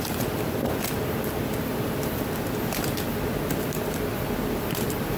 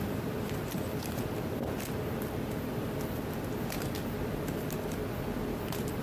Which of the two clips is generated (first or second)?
first